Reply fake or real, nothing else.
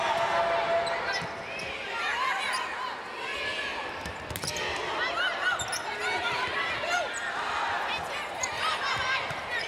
real